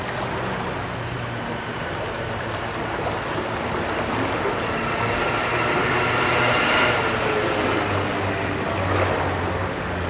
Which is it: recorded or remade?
recorded